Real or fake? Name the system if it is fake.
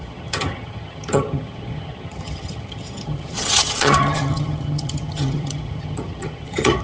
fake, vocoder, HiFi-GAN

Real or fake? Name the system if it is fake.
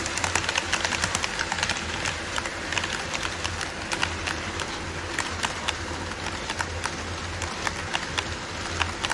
real